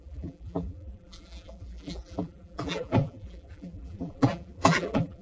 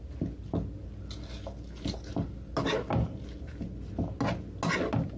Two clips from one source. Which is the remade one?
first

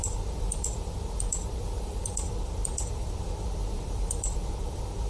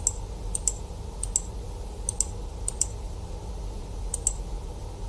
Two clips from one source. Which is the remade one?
first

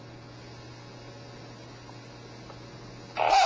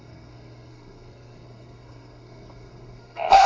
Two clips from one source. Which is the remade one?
second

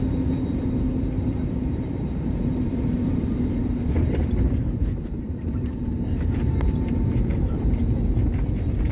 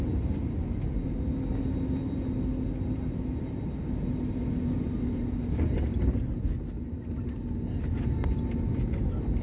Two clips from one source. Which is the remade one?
first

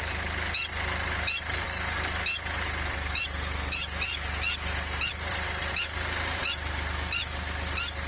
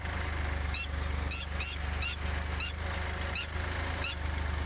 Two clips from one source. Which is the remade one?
first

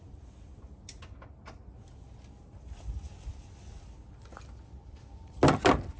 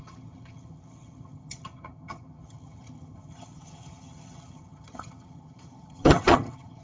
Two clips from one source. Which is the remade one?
second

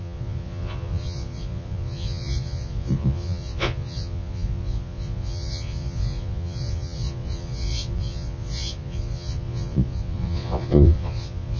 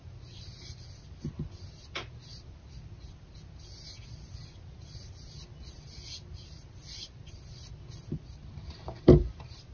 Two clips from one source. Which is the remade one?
first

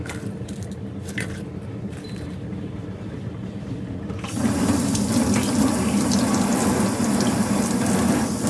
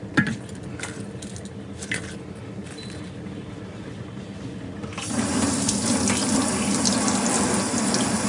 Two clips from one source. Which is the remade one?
first